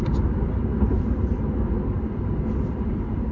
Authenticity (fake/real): real